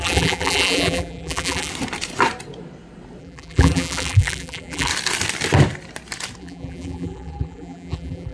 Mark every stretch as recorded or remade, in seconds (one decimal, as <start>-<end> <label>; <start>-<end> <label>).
0.0-1.7 remade; 1.7-3.2 recorded; 3.2-4.9 remade; 4.9-6.4 recorded; 6.4-8.3 remade